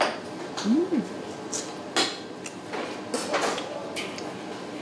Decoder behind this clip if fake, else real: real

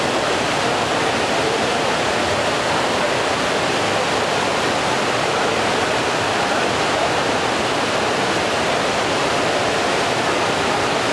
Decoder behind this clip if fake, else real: real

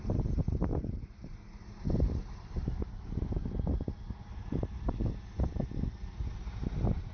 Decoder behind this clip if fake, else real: real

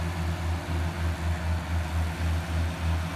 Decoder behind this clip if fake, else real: real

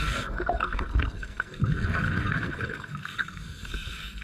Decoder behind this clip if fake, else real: fake, codec, SNAC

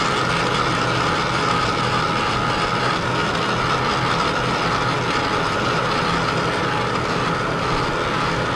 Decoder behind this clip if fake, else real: real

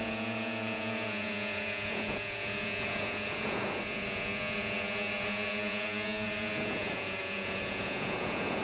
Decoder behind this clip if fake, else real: fake, vocoder, Vocos